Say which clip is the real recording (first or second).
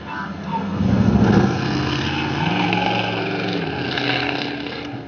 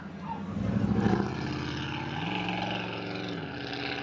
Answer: second